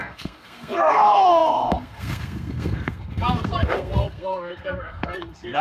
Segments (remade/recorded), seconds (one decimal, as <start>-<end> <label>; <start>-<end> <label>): 0.0-5.6 remade